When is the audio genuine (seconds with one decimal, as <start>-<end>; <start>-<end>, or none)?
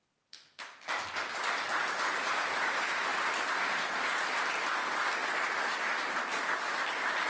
0.0-7.3